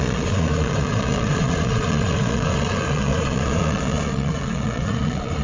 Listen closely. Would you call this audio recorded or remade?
remade